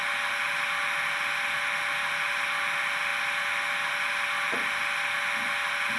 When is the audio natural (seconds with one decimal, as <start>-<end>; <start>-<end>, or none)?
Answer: 0.0-6.0